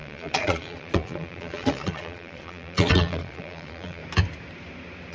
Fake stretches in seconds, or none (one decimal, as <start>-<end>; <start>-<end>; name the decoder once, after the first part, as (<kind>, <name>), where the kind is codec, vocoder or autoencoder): 0.0-4.0 (vocoder, Vocos)